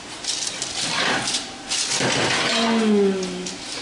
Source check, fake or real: real